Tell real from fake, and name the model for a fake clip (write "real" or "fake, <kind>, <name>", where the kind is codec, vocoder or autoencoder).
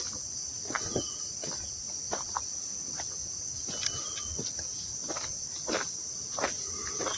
real